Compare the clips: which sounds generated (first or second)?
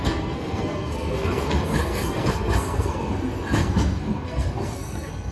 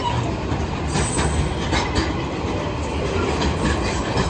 first